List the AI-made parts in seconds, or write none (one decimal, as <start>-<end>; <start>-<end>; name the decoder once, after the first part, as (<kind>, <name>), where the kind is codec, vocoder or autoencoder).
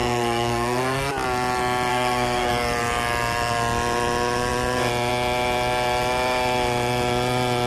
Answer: 0.0-1.1 (codec, SNAC); 1.9-2.5